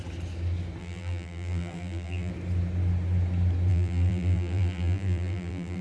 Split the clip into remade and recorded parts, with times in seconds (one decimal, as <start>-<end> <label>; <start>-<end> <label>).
0.0-0.8 recorded; 0.8-2.3 remade; 2.3-3.7 recorded; 3.7-5.8 remade